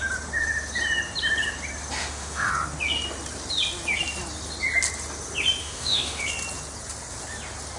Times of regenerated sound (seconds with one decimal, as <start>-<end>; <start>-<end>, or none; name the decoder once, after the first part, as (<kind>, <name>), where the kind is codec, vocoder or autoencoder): 2.0-2.5 (autoencoder, DAC-VAE); 5.6-6.2